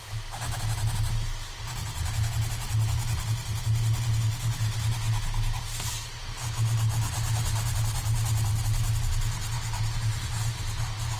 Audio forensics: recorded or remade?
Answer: recorded